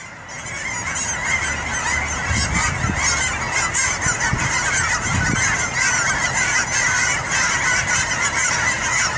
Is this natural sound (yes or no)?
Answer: yes